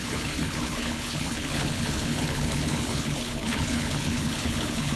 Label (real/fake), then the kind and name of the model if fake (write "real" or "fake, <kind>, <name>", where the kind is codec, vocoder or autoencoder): fake, codec, HILCodec